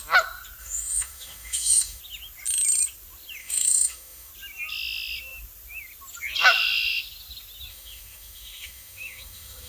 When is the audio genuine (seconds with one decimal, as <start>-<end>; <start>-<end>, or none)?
0.0-0.6; 2.0-3.4; 4.3-7.7